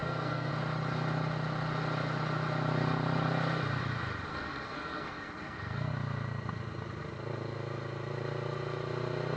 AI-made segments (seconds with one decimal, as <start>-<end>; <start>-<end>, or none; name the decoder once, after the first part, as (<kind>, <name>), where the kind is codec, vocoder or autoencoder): 0.0-0.5 (codec, SNAC); 4.3-5.9